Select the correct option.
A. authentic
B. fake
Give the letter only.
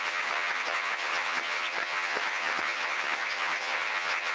B